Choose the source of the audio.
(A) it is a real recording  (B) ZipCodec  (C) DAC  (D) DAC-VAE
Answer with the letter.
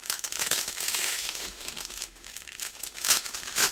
D